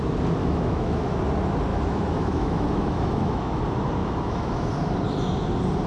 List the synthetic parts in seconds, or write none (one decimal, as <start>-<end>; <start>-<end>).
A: 0.4-1.2; 1.7-3.6; 4.0-4.7